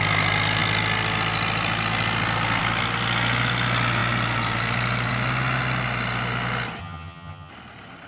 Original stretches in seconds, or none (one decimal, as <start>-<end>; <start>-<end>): 0.0-6.8; 7.5-8.1